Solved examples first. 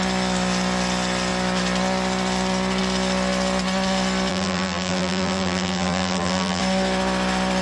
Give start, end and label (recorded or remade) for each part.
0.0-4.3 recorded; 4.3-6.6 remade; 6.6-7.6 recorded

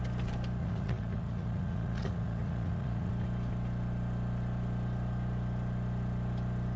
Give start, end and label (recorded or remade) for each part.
0.0-0.6 recorded; 0.6-3.1 remade; 3.1-6.8 recorded

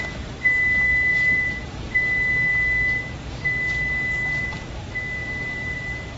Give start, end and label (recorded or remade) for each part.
0.0-1.1 recorded; 1.1-1.9 remade; 1.9-5.2 recorded; 5.2-6.2 remade